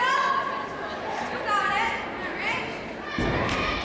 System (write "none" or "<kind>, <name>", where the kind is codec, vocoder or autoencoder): none